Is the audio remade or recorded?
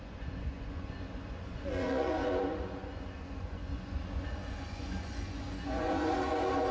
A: remade